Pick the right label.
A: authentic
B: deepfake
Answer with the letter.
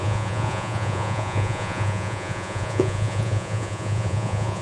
B